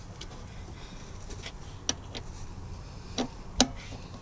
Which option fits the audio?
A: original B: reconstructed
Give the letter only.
A